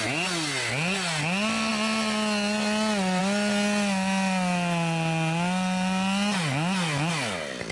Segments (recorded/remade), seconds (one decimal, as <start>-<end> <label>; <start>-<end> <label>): 0.0-7.7 recorded